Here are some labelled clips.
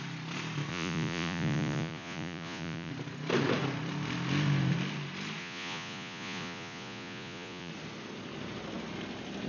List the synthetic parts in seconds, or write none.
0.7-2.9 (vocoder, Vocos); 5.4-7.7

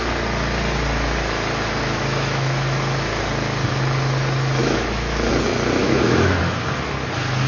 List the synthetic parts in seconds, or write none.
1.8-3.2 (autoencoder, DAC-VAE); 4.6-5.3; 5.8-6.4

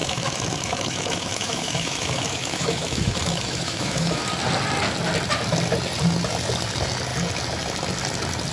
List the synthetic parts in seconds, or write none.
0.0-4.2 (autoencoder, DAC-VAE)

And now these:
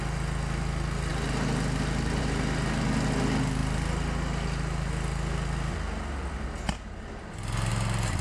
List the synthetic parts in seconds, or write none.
none

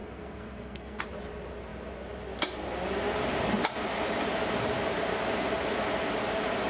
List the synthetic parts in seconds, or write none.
0.0-1.0 (codec, SNAC)

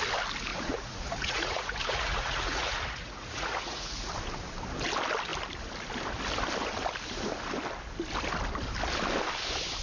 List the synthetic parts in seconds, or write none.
0.5-4.1 (vocoder, Vocos)

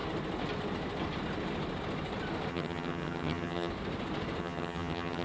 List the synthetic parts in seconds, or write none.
2.5-3.7 (vocoder, HiFi-GAN); 4.4-5.2

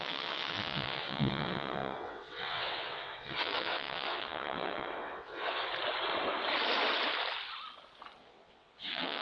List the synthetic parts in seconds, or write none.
0.0-5.7 (vocoder, WaveNeXt); 8.2-9.2